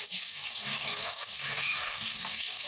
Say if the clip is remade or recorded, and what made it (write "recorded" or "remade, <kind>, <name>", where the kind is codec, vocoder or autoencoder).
remade, codec, DAC